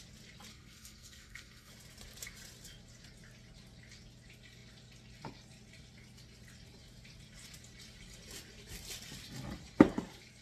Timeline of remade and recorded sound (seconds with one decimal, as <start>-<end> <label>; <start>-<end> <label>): 0.0-0.5 recorded; 0.5-1.7 remade; 1.7-10.4 recorded